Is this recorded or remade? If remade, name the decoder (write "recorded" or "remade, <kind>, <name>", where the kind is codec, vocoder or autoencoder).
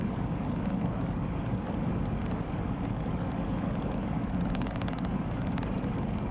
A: remade, codec, DAC